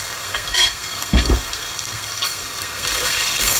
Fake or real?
fake